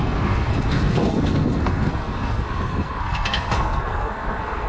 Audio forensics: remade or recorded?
remade